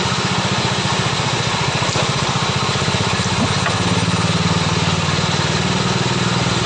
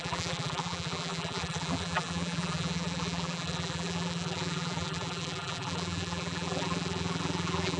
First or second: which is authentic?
first